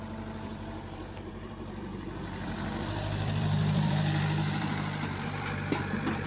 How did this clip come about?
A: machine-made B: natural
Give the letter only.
A